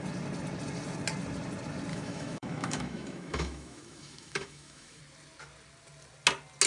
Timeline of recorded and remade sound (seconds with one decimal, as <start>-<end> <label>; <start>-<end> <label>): 0.0-1.9 recorded; 1.9-5.0 remade; 5.0-6.7 recorded